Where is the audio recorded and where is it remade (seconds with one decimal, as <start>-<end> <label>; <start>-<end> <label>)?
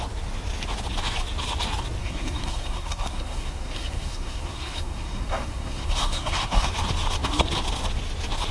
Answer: 0.0-2.0 recorded; 2.0-6.7 remade; 6.7-8.5 recorded